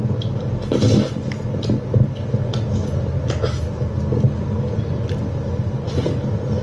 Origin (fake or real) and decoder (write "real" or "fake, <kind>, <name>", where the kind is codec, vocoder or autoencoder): real